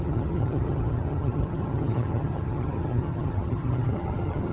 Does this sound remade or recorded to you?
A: remade